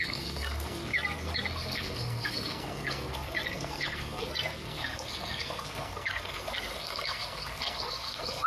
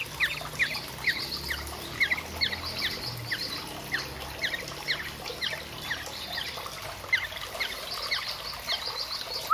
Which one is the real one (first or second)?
second